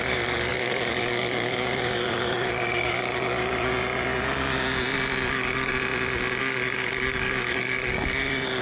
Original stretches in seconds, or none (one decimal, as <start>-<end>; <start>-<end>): 3.7-5.3; 5.7-6.4